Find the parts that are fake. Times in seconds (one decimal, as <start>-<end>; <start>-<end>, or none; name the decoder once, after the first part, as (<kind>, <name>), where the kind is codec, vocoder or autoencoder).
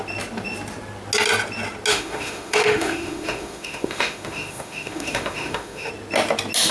1.9-5.9 (autoencoder, DAC-VAE)